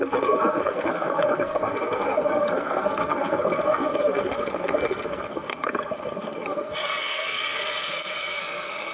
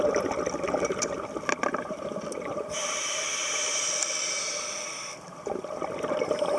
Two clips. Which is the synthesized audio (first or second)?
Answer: first